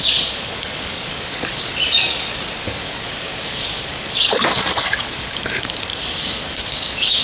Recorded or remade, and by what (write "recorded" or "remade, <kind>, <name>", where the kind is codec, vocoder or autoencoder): remade, codec, DAC